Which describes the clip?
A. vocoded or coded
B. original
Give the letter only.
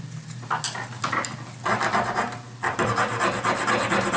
B